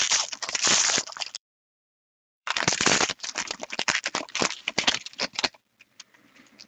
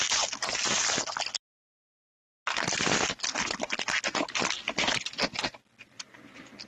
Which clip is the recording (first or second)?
second